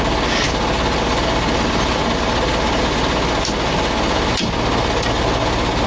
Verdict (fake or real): real